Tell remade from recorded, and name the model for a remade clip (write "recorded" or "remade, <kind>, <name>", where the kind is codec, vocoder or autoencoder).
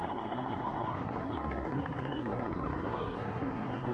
remade, codec, SNAC